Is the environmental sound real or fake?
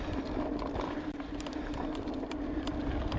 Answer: real